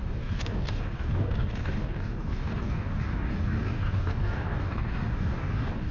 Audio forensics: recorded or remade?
remade